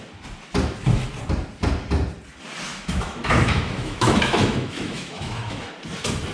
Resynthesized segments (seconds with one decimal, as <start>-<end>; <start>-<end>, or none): 2.7-5.7